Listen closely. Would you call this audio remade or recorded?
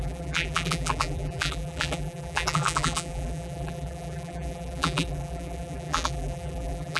remade